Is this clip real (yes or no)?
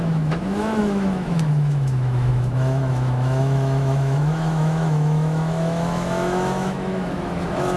no